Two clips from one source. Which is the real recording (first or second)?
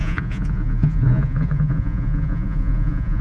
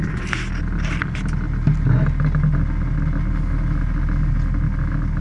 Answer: second